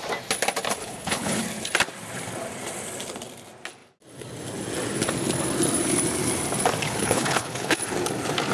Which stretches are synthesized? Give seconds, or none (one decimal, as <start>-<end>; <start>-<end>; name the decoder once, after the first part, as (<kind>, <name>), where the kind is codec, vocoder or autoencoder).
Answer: 0.8-1.4 (codec, HILCodec); 7.0-7.8